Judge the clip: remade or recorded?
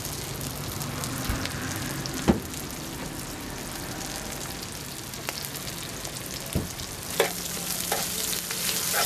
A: recorded